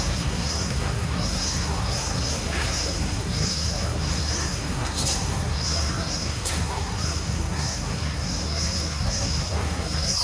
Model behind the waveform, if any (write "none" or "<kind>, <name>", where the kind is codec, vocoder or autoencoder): codec, SNAC